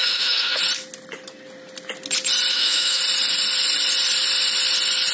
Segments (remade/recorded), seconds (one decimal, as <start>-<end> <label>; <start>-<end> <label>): 0.0-0.6 remade; 0.6-2.5 recorded; 2.5-3.0 remade; 3.0-5.1 recorded